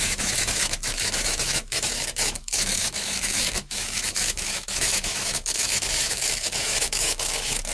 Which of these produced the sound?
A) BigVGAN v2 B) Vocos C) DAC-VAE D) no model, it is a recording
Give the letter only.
C